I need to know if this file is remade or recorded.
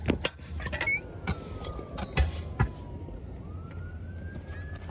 recorded